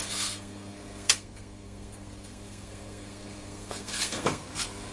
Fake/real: fake